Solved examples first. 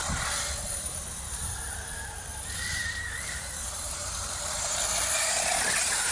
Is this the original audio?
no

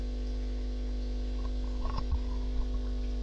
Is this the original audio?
yes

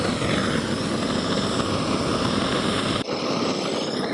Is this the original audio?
yes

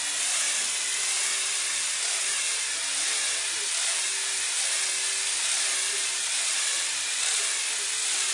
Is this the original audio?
yes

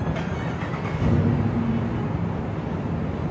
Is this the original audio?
yes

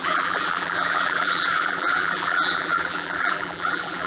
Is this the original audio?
no